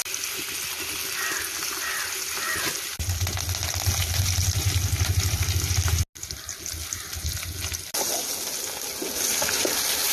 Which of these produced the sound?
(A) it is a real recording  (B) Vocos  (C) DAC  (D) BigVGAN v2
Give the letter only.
A